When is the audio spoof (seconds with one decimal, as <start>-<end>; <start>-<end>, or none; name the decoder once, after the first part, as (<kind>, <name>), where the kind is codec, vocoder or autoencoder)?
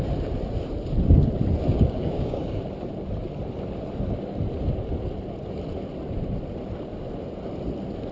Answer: 1.7-2.6 (codec, DAC)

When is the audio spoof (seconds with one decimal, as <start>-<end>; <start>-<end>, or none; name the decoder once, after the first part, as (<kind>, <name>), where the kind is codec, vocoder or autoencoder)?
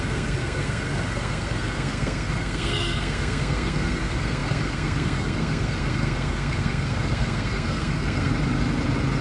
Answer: 0.0-8.3 (codec, SNAC)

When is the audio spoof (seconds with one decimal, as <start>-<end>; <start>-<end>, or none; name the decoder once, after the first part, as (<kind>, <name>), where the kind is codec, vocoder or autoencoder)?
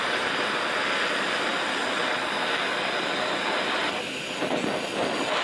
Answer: 0.0-0.6 (vocoder, BigVGAN v2)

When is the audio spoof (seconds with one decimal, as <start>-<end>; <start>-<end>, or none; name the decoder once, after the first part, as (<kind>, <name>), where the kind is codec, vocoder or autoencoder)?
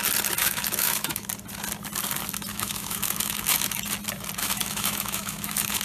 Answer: 0.4-1.3 (autoencoder, DAC-VAE); 2.5-3.8; 4.4-5.8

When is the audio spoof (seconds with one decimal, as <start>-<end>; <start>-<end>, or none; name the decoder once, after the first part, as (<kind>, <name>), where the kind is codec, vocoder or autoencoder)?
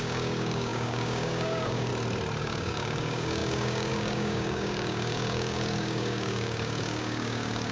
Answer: 0.0-1.9 (codec, DAC); 2.4-7.7